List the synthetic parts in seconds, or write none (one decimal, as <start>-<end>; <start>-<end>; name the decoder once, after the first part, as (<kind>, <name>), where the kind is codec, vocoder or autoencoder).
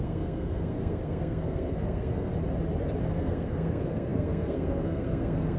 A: 0.0-2.3 (codec, SNAC); 3.0-5.6